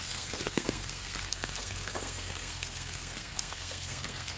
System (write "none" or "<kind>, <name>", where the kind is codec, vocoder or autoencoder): codec, SNAC